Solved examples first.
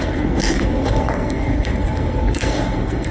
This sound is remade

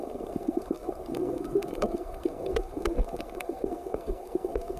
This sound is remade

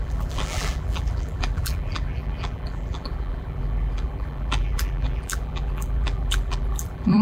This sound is remade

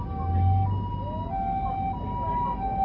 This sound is recorded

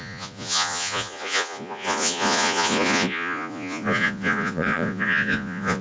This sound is remade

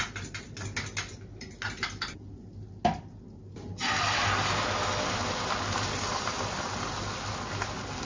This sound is recorded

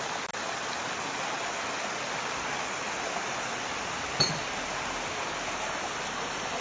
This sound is recorded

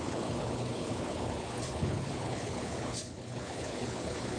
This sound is remade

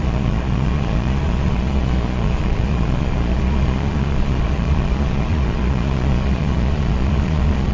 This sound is remade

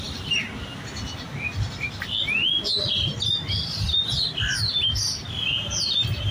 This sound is recorded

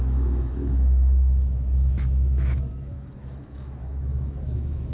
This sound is remade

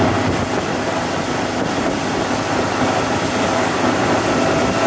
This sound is recorded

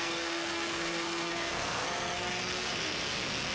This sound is remade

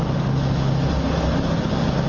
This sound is recorded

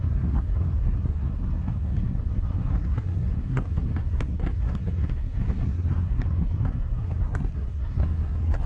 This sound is remade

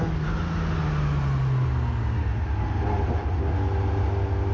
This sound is recorded